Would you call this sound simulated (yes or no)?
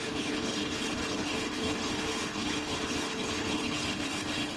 yes